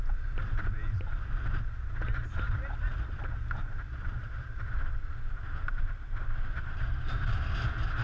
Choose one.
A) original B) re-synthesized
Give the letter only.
A